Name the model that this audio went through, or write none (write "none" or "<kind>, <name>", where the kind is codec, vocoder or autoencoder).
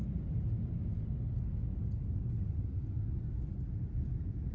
none